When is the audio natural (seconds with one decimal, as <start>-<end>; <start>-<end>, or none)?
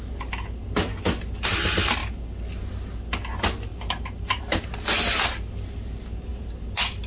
0.0-7.1